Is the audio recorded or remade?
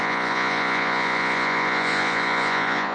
remade